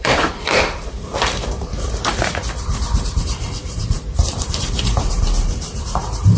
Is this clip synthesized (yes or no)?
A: yes